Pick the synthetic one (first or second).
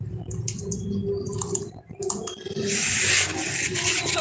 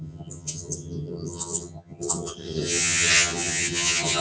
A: second